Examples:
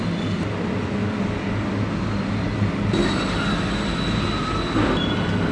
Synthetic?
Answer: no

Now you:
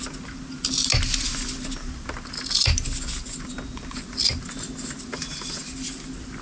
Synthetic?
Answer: no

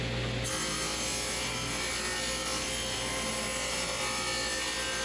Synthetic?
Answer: no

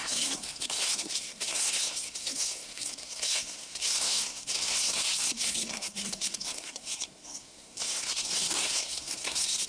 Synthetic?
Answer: yes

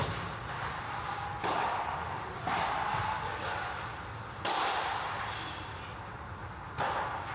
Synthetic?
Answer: no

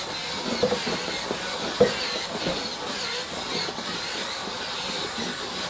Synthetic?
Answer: no